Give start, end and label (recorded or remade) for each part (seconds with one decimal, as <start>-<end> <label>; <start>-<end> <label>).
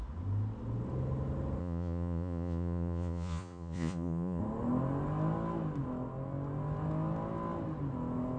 0.0-1.6 recorded; 1.6-4.4 remade; 4.4-8.4 recorded